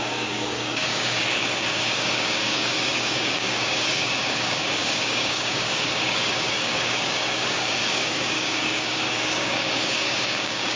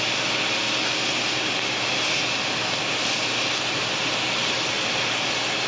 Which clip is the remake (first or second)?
first